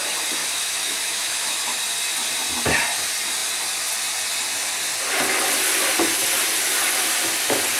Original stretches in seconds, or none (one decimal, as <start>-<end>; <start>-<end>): 0.0-0.4; 1.8-7.8